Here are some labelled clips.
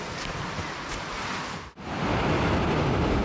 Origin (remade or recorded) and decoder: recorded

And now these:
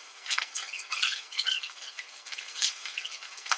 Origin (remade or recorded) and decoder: remade, codec, SNAC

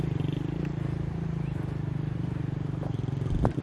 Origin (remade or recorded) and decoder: recorded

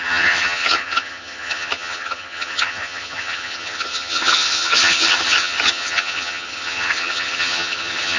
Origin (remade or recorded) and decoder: remade, vocoder, HiFi-GAN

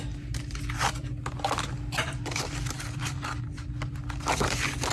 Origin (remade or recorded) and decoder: recorded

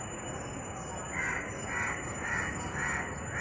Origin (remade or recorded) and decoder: recorded